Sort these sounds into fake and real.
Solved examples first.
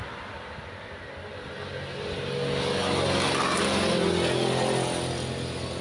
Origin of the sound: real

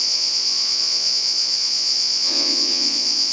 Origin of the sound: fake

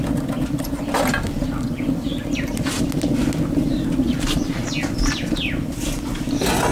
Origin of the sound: real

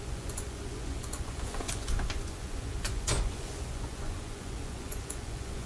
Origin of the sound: fake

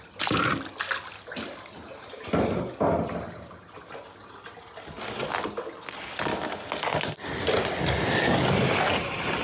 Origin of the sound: real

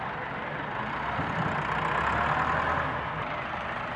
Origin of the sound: real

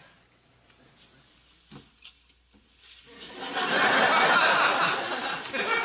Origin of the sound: real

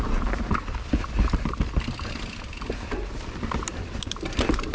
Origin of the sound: real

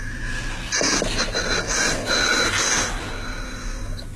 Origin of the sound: real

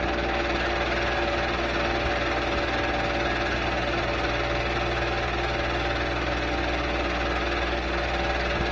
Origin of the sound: real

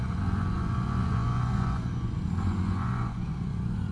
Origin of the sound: fake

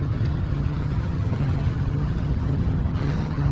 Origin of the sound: fake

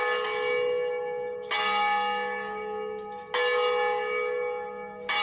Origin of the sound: real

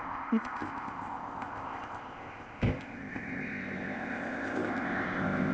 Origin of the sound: fake